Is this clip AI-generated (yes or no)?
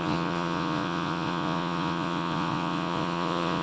yes